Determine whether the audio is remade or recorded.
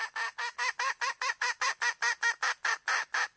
recorded